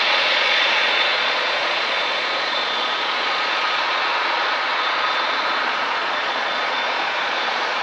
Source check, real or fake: fake